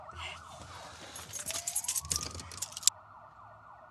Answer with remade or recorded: recorded